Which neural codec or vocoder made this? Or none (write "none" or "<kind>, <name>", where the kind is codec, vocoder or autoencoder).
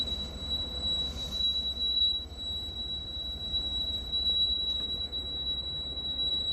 vocoder, BigVGAN v2